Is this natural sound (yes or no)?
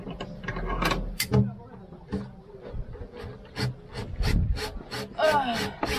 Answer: yes